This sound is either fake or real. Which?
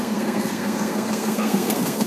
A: fake